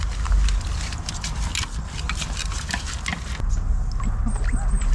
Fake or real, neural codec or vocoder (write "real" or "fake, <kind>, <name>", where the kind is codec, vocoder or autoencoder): real